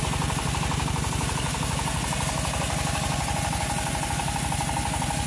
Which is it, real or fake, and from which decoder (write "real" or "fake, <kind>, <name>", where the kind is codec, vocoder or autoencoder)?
real